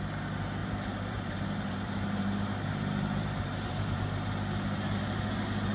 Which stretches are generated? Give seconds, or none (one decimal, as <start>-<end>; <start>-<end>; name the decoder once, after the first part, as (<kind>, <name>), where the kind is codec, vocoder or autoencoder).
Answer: 0.6-4.0 (vocoder, BigVGAN v2)